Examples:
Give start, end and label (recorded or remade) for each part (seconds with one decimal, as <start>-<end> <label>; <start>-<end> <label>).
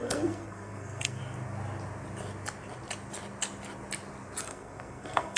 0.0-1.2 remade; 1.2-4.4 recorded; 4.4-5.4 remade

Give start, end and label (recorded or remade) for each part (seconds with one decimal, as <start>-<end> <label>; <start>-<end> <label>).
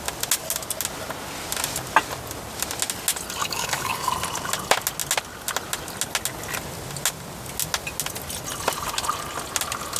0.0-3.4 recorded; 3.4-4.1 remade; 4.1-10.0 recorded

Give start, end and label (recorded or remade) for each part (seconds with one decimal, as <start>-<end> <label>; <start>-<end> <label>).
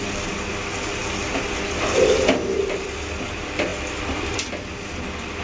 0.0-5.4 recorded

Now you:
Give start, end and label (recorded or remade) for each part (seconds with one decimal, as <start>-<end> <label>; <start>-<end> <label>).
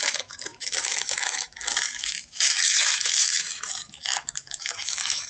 0.0-5.3 remade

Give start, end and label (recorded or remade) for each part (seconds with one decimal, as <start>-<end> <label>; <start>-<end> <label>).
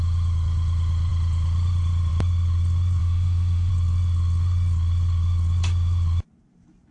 0.0-3.0 recorded; 3.0-3.7 remade; 3.7-6.9 recorded